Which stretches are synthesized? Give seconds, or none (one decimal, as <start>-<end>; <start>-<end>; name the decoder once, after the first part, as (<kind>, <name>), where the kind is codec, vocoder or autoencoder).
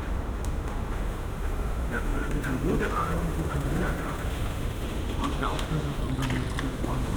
0.0-6.0 (autoencoder, DAC-VAE); 6.6-7.2